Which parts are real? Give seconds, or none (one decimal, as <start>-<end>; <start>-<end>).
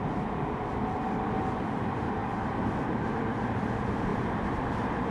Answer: 2.2-3.1